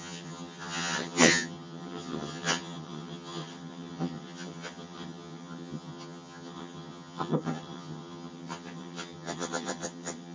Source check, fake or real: fake